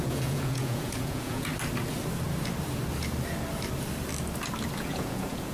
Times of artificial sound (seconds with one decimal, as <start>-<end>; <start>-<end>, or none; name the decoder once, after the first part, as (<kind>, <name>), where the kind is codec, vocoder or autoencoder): 0.0-1.5 (vocoder, Vocos); 4.8-5.5